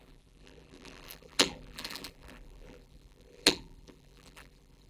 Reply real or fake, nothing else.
fake